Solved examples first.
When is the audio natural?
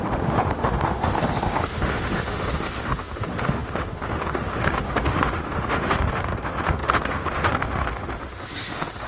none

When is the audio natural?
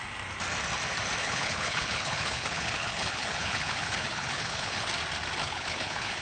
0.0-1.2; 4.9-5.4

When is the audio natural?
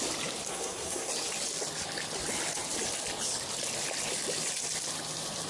0.0-0.5; 1.1-5.5